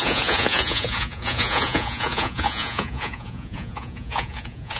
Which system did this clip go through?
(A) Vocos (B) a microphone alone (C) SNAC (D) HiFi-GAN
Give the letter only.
A